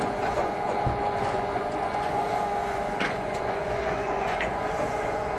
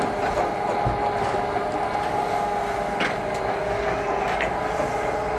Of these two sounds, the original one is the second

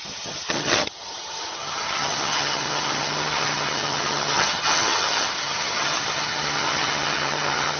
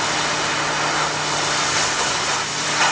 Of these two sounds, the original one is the second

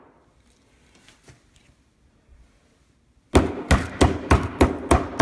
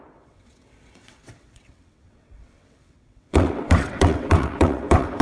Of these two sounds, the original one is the first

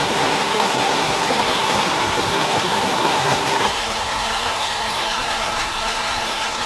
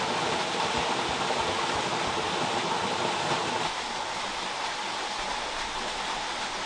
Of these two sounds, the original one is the second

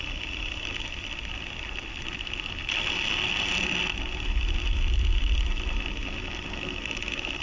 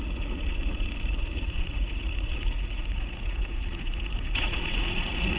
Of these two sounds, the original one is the first